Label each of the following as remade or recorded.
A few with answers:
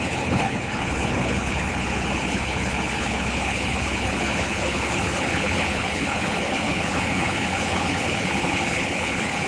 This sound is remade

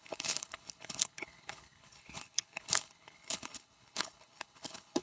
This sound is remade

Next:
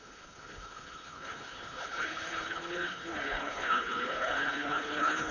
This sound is remade